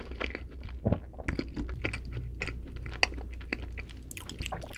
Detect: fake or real real